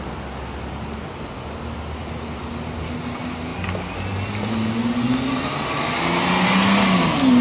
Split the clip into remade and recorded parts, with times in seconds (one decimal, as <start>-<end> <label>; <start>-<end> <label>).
0.0-7.4 recorded